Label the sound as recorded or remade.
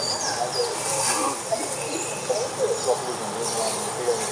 recorded